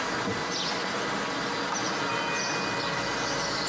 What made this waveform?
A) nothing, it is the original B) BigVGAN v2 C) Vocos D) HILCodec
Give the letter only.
A